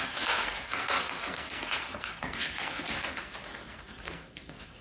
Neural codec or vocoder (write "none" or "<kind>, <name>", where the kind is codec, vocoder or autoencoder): codec, SNAC